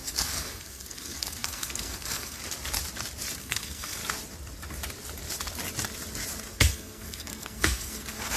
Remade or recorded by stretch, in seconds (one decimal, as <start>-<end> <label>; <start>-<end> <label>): 0.0-2.4 remade; 2.4-3.4 recorded; 3.4-4.0 remade; 4.0-6.4 recorded; 6.4-8.4 remade